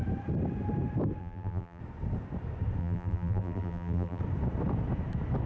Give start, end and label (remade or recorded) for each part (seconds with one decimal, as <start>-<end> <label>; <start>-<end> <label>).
0.0-1.2 recorded; 1.2-1.8 remade; 1.8-2.8 recorded; 2.8-4.2 remade; 4.2-5.5 recorded